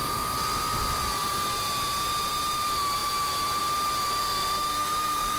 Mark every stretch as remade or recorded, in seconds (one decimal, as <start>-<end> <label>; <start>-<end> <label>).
0.0-4.2 recorded; 4.2-5.4 remade